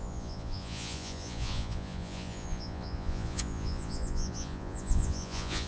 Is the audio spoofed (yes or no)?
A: yes